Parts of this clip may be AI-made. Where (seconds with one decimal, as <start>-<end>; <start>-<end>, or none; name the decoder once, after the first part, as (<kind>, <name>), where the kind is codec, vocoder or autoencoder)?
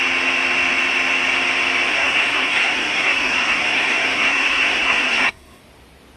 1.9-5.6 (codec, SNAC)